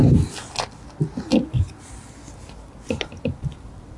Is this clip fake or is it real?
real